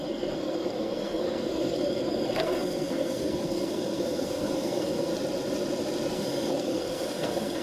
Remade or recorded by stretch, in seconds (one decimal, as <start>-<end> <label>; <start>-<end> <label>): 0.0-5.1 remade; 5.1-6.1 recorded; 6.1-7.6 remade